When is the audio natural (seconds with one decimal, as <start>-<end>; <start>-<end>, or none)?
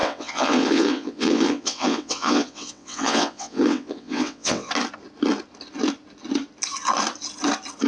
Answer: 4.7-7.9